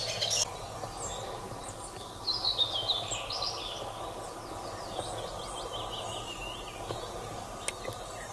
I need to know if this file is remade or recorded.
recorded